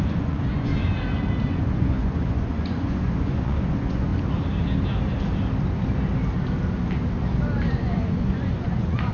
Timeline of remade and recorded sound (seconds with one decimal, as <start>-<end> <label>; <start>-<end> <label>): 0.0-0.7 remade; 0.7-1.5 recorded; 1.5-4.1 remade; 4.1-7.7 recorded; 7.7-9.1 remade